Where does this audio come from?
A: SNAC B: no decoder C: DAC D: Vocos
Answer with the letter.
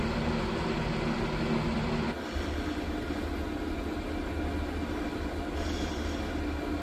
B